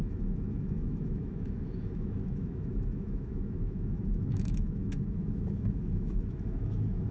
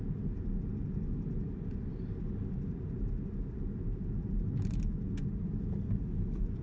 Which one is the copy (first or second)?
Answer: first